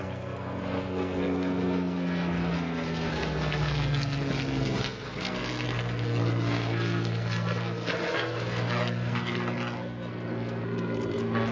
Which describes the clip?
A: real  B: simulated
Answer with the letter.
B